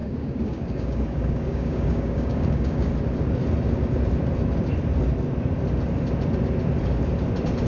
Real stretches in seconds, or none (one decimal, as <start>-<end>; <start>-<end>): 2.9-7.7